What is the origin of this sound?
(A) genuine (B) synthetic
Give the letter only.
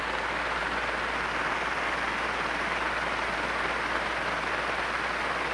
A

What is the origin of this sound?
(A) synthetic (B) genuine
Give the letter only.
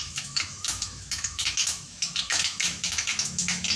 A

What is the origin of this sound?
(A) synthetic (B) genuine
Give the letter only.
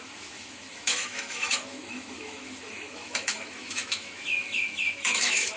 A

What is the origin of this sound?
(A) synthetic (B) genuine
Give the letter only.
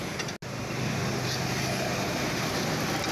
B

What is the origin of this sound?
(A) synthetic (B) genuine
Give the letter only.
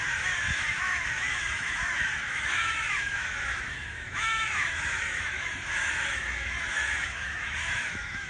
A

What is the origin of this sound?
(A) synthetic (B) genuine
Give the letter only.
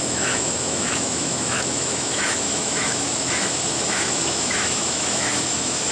A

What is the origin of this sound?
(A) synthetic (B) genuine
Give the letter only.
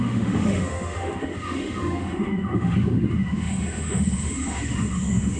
A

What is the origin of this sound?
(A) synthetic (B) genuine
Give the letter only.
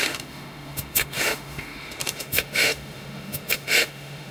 A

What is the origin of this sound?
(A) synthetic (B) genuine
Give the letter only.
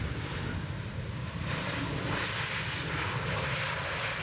B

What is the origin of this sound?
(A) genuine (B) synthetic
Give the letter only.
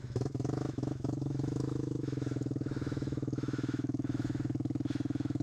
B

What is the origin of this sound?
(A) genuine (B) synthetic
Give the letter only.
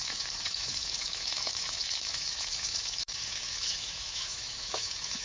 B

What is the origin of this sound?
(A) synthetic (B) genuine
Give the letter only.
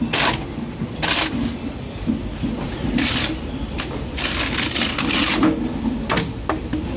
B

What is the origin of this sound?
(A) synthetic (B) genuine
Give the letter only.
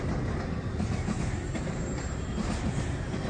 B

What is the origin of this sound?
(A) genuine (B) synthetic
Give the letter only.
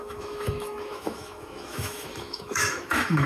B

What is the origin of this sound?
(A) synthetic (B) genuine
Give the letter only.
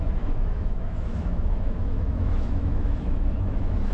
A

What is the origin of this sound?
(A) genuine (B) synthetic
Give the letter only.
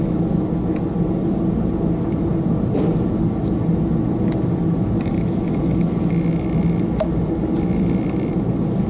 A